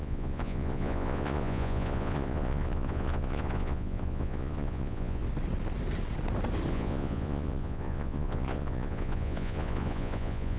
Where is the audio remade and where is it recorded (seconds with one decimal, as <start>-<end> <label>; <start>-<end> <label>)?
0.0-5.2 remade; 5.2-6.7 recorded; 6.7-10.6 remade